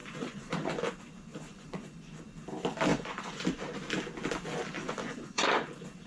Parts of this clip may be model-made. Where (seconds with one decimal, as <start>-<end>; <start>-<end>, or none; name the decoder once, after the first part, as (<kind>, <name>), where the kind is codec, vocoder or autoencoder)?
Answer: 0.0-0.7 (vocoder, Vocos); 1.3-2.2; 2.9-3.4; 4.8-5.4